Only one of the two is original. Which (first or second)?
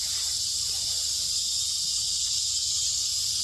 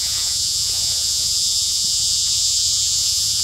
first